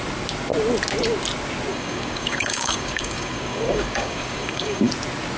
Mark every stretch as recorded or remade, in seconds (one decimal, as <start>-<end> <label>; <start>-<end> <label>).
0.0-1.7 recorded; 1.7-4.9 remade; 4.9-5.4 recorded